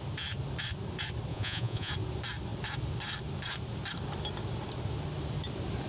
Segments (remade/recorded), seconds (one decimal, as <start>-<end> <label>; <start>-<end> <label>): 0.0-1.3 recorded; 1.3-1.9 remade; 1.9-5.9 recorded